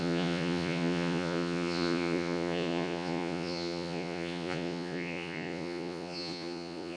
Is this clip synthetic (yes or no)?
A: yes